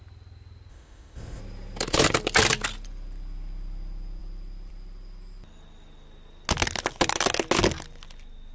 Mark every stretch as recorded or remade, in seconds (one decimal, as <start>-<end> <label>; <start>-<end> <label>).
0.0-0.7 recorded; 0.7-1.4 remade; 1.4-8.5 recorded